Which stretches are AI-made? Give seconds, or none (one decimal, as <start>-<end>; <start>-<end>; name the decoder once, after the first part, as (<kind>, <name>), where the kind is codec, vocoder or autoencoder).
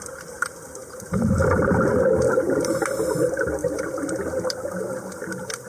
none